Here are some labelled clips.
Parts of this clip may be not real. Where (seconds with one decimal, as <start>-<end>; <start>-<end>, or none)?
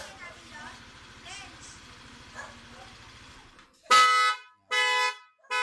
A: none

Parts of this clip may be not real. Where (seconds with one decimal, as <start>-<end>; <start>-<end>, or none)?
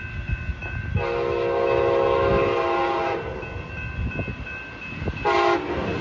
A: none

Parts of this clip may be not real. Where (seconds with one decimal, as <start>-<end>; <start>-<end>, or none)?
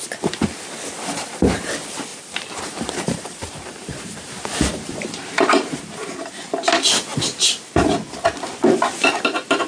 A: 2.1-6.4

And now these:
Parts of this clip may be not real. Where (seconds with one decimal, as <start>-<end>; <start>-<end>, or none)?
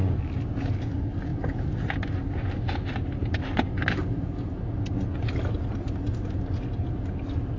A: none